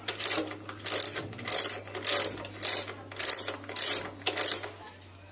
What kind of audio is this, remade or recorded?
recorded